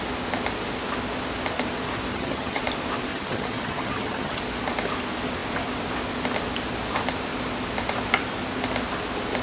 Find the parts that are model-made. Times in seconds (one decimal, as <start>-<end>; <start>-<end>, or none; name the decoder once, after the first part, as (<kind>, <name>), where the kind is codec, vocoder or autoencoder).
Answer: 2.1-2.6 (vocoder, HiFi-GAN); 3.1-4.4